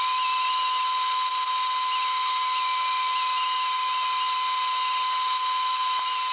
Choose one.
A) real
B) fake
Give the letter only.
A